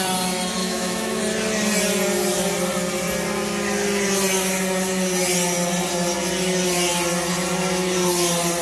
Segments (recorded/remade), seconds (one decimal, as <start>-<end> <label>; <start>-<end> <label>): 0.0-0.6 recorded; 0.6-1.2 remade; 1.2-8.6 recorded